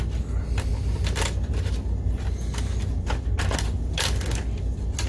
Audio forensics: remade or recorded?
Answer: recorded